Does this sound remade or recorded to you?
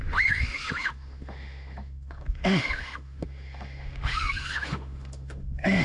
remade